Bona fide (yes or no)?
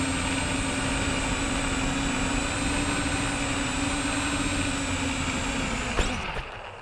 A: yes